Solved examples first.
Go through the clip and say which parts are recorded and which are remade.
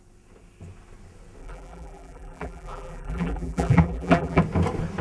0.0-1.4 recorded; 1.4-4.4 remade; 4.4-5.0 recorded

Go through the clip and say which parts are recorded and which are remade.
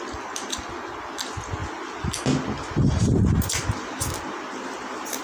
0.0-5.2 recorded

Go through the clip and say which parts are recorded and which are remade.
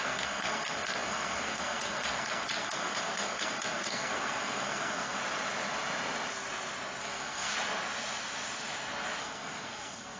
0.0-5.2 remade; 5.2-7.0 recorded; 7.0-7.5 remade; 7.5-9.2 recorded; 9.2-10.2 remade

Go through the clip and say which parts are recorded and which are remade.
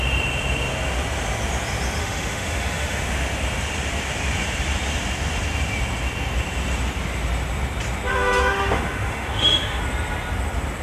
0.0-2.0 recorded; 2.0-3.0 remade; 3.0-8.1 recorded; 8.1-9.8 remade; 9.8-10.8 recorded